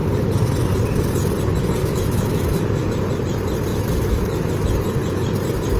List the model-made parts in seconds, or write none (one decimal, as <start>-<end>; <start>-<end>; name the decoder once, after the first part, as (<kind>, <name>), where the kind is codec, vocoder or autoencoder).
1.8-2.9 (autoencoder, DAC-VAE); 3.7-4.4